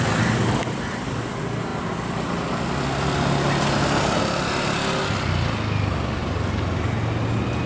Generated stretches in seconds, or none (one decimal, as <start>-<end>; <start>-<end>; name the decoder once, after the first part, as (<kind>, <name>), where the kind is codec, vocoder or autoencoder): 6.2-6.8 (vocoder, BigVGAN v2)